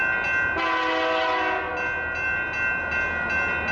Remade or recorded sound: recorded